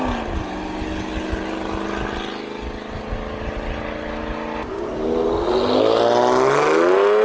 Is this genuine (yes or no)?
yes